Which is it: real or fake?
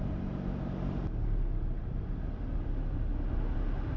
real